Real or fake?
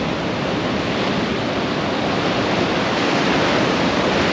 fake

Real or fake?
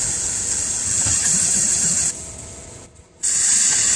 real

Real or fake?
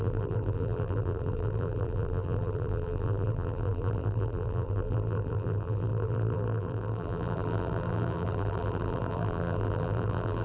fake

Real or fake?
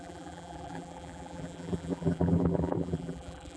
fake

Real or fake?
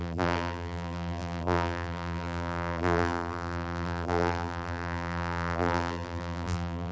fake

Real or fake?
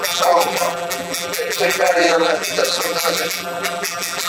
fake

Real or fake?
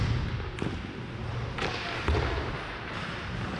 real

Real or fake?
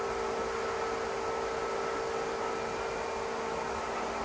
real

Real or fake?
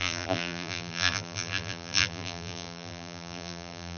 fake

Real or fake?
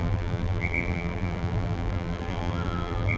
fake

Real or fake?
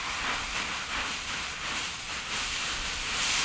fake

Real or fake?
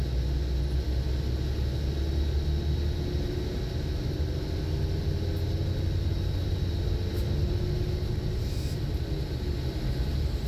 real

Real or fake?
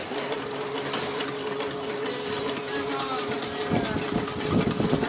real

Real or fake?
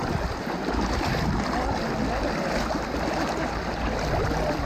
real